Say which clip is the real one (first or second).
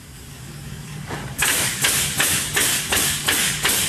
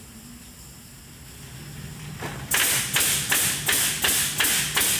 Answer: second